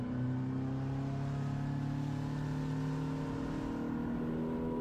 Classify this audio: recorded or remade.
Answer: recorded